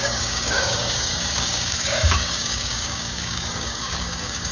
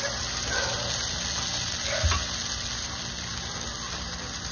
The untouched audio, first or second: second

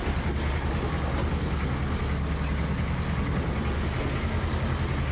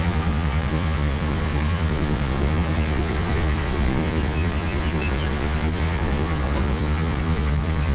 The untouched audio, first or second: first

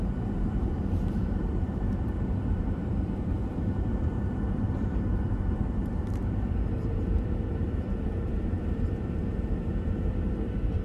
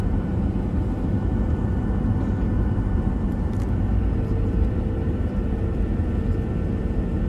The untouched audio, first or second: second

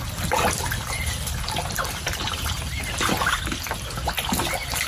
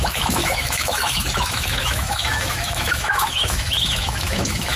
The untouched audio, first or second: first